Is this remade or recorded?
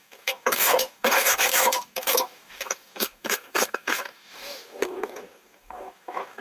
remade